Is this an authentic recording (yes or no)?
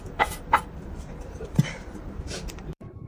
no